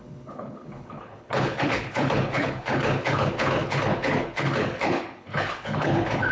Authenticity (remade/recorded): remade